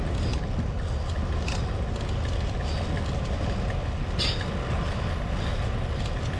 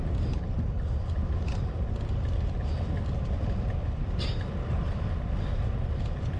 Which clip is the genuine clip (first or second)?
first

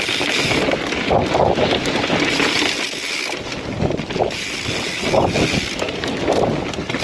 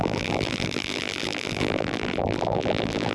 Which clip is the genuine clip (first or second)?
first